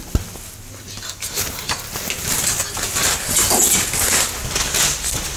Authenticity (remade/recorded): recorded